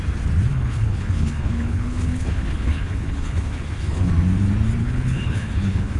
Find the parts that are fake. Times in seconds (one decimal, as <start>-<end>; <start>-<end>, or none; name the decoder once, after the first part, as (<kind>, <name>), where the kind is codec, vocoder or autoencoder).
0.5-4.1 (codec, HILCodec); 4.8-6.0